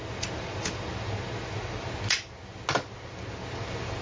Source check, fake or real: real